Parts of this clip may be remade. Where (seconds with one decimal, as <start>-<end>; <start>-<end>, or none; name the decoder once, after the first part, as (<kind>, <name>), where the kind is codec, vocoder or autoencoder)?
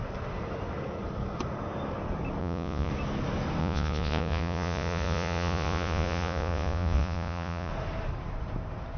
2.4-2.9 (vocoder, Vocos); 3.6-7.7